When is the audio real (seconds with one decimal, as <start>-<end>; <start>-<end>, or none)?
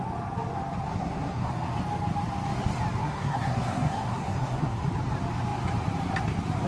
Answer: 0.0-0.9; 1.5-3.0; 4.9-6.7